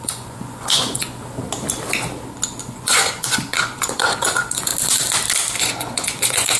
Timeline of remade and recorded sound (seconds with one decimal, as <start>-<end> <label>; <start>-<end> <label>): 0.0-1.2 remade; 1.2-2.6 recorded; 2.6-4.7 remade; 4.7-5.6 recorded; 5.6-6.6 remade